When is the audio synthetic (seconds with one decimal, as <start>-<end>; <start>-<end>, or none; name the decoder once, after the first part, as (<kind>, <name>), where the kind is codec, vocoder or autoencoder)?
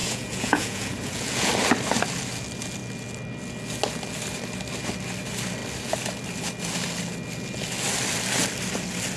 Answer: 0.0-1.5 (vocoder, Vocos)